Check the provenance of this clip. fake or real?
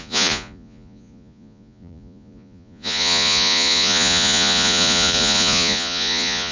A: fake